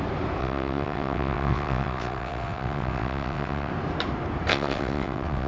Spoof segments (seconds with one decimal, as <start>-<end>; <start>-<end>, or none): 0.4-3.7; 4.5-5.5